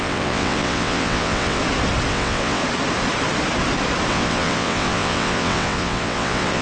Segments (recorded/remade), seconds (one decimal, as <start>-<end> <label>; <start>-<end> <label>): 0.0-1.6 remade; 1.6-2.1 recorded; 2.1-2.6 remade; 2.6-4.1 recorded; 4.1-6.6 remade